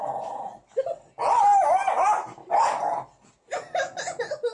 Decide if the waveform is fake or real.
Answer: real